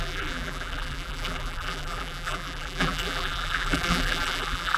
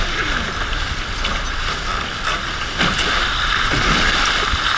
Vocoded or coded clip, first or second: first